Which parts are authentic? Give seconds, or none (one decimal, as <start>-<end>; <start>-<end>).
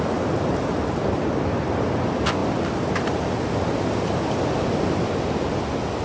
0.0-6.0